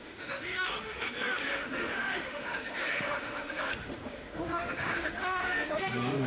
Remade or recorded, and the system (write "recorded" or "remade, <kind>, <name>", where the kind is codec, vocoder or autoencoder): remade, autoencoder, DAC-VAE